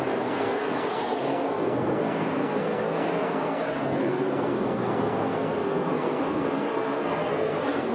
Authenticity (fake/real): fake